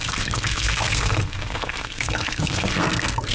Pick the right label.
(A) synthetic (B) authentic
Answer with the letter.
A